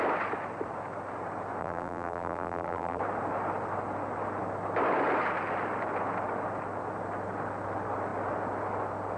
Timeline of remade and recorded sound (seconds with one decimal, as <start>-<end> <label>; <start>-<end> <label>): 0.0-1.6 recorded; 1.6-3.0 remade; 3.0-9.2 recorded